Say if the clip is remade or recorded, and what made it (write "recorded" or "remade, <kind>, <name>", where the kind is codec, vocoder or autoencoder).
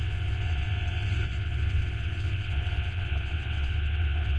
remade, vocoder, WaveNeXt